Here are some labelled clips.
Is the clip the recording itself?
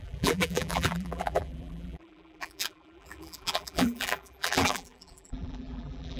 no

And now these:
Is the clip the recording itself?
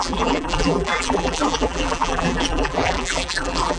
no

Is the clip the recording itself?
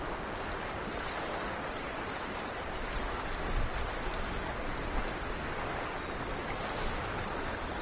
yes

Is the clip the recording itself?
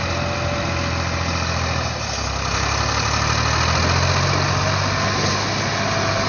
yes